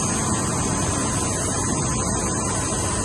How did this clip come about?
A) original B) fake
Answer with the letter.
A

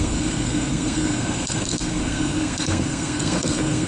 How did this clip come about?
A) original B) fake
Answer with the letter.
B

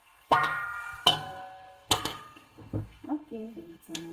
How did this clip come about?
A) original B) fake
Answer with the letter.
B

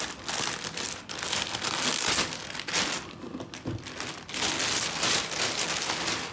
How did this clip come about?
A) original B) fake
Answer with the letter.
A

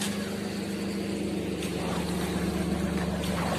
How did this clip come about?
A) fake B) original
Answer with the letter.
B